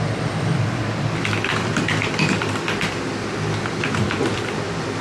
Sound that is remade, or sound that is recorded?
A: remade